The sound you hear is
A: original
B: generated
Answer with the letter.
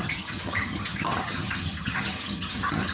B